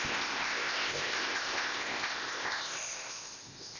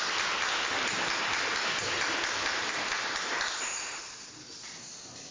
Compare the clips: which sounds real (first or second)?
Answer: second